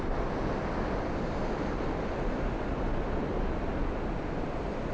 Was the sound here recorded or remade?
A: recorded